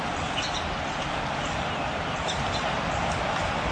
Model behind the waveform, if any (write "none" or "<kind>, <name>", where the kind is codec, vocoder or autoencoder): none